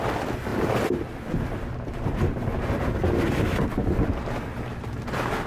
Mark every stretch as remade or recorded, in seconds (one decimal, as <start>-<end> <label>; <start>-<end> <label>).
0.0-5.5 recorded